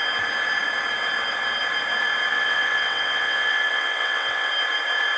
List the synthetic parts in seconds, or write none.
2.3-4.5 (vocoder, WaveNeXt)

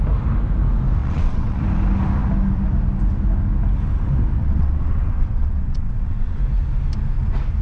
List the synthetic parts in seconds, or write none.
1.0-1.6 (vocoder, WaveNeXt); 4.4-6.4

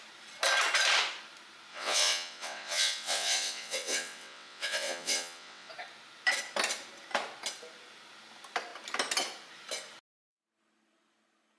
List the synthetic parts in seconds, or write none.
1.7-5.7 (vocoder, WaveNeXt)

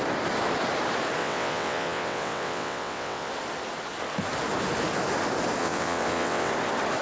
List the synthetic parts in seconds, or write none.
1.2-3.3 (vocoder, WaveNeXt); 5.6-6.5